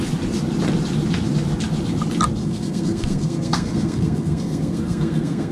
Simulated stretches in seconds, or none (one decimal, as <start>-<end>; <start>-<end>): 2.4-5.5

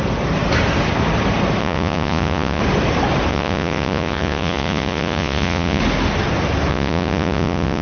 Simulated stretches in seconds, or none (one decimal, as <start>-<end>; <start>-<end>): 1.6-2.6; 3.3-5.8; 6.7-7.8

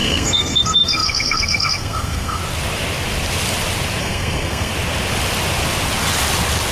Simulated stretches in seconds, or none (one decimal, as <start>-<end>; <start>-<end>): 0.0-2.4; 4.0-4.7

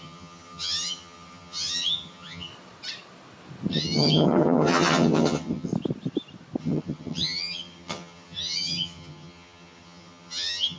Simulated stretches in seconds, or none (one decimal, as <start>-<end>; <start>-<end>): 0.0-2.5; 3.7-5.7; 6.6-10.8

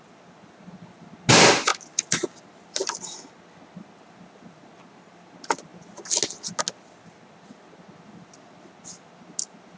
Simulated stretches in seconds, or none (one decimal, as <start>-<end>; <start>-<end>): none